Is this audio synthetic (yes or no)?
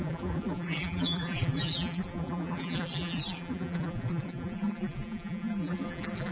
yes